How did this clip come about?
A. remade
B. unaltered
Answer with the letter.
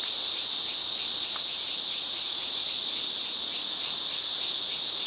B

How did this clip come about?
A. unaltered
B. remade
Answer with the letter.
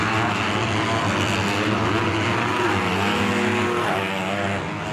A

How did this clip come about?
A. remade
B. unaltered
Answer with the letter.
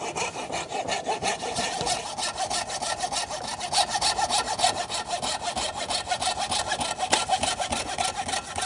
B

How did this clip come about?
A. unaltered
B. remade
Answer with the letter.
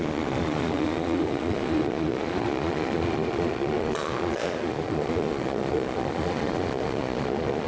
B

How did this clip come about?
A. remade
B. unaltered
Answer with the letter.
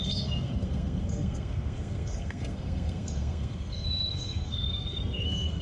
A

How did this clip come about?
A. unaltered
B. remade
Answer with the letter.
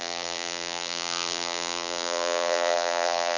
B